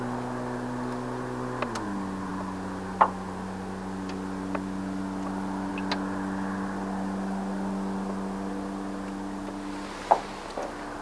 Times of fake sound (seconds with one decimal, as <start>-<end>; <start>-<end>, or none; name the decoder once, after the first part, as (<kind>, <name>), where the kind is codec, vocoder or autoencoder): none